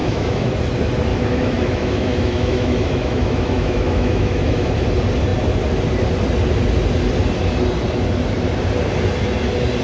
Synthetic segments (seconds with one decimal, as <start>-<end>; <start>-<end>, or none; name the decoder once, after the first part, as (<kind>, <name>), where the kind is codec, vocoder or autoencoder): 0.0-0.5 (autoencoder, DAC-VAE); 1.1-4.7